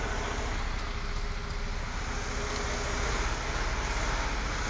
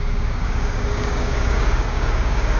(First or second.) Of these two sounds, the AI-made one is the second